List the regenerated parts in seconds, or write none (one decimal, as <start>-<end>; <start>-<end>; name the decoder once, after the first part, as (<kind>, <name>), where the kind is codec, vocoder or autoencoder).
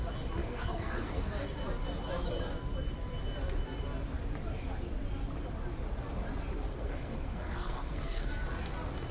0.4-1.3 (codec, SNAC); 6.7-8.3